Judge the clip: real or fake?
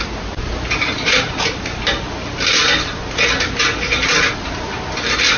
real